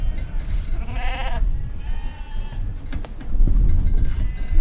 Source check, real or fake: real